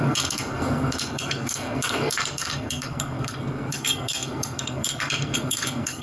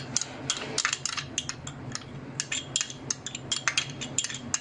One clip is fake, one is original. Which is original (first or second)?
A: second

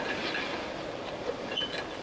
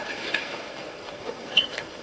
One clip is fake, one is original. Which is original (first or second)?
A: first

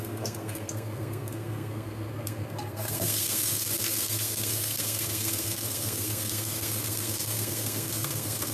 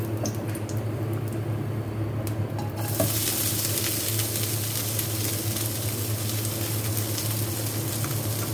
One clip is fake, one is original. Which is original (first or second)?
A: second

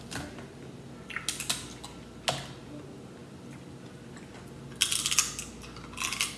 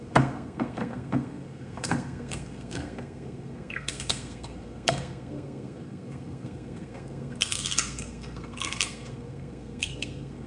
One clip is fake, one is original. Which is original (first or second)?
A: first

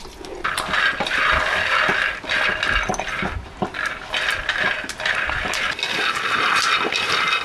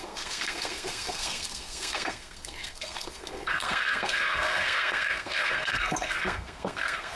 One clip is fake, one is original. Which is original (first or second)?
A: first